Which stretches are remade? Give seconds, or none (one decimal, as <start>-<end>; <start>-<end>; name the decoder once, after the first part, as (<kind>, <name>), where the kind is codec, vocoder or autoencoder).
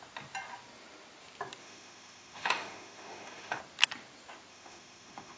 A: 1.6-3.6 (autoencoder, DAC-VAE); 4.5-5.4